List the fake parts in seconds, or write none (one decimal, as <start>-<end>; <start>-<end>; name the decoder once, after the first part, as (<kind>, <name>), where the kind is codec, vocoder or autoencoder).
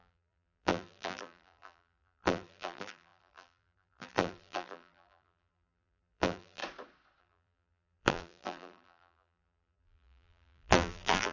0.0-6.6 (vocoder, BigVGAN v2); 7.2-11.3